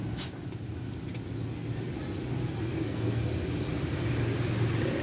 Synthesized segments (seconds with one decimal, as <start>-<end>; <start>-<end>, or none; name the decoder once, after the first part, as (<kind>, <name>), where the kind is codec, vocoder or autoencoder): 2.7-3.2 (codec, SNAC)